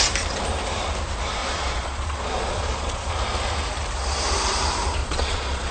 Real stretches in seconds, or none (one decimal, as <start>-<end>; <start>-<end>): 0.0-1.4; 3.1-5.0